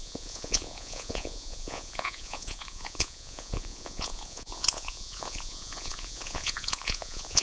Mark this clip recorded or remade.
remade